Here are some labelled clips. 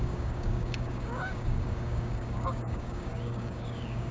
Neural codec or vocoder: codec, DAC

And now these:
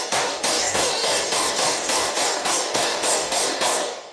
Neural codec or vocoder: codec, DAC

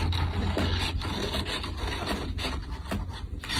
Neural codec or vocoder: none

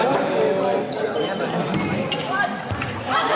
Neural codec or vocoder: none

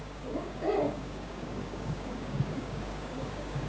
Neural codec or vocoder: codec, DAC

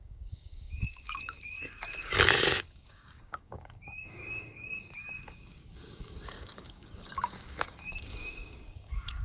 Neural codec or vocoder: codec, DAC